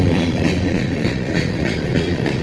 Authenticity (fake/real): fake